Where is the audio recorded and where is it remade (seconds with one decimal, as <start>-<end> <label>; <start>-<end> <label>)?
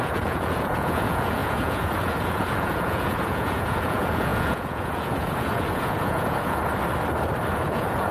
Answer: 0.0-6.6 remade; 6.6-7.5 recorded; 7.5-8.1 remade